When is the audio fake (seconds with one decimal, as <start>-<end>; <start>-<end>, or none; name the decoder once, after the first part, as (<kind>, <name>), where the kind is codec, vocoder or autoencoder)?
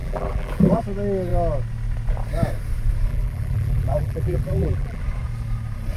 0.0-0.8 (vocoder, BigVGAN v2); 3.1-5.0